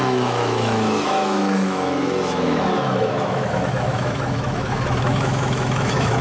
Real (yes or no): no